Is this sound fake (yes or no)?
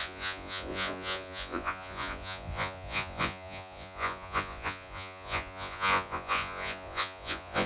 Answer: yes